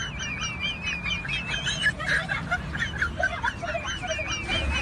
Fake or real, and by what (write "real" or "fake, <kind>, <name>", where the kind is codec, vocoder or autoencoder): real